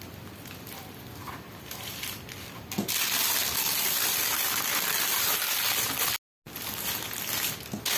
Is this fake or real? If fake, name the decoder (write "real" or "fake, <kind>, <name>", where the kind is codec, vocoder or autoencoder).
real